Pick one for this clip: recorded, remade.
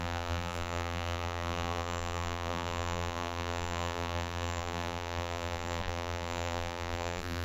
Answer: remade